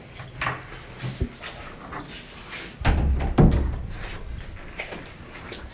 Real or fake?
real